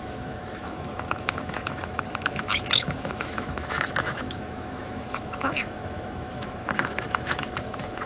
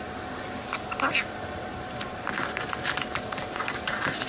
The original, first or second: second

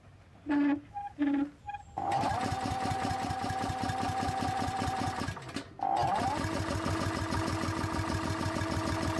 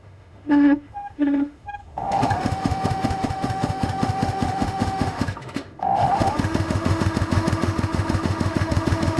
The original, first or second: first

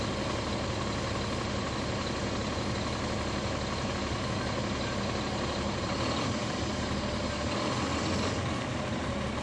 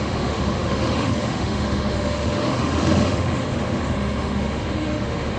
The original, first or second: first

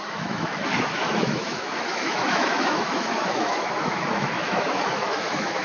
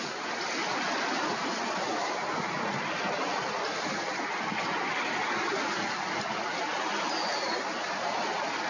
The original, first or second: second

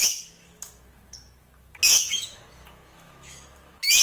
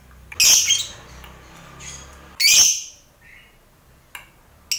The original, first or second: second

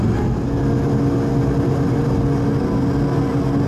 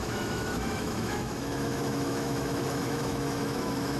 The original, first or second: first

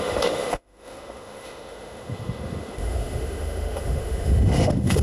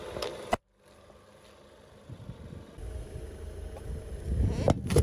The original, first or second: second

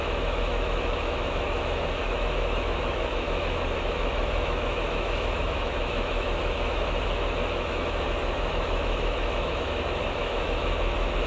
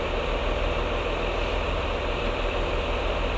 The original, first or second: second